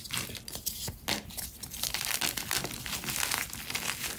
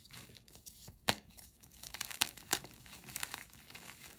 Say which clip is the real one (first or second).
first